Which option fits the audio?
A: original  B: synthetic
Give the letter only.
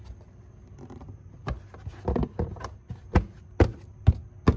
A